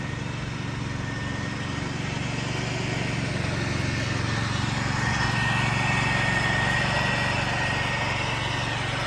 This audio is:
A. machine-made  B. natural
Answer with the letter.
B